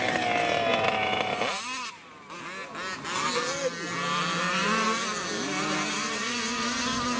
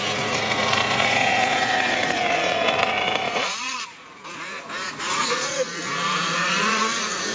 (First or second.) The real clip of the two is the first